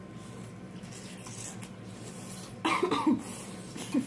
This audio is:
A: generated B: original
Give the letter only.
B